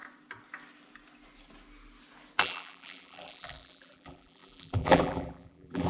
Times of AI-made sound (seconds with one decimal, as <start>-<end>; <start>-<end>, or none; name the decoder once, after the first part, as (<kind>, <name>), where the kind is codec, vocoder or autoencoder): 2.4-5.9 (vocoder, BigVGAN v2)